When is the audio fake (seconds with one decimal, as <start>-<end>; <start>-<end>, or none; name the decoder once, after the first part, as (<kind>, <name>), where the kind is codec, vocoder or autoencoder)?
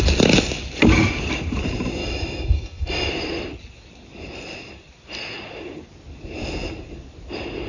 2.0-3.1 (autoencoder, DAC-VAE)